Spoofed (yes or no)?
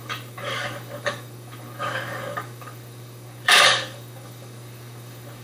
yes